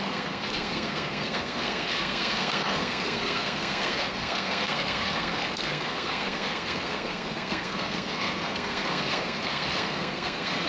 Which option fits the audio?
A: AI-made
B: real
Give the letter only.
A